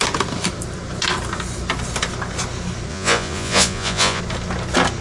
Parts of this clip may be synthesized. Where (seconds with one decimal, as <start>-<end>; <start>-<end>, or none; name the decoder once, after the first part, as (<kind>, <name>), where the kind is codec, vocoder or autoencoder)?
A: 2.9-4.2 (vocoder, Vocos)